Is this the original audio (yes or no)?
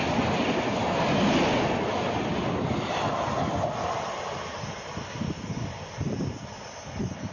yes